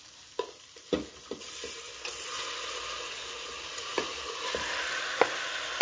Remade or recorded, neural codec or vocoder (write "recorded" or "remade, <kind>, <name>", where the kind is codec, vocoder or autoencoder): recorded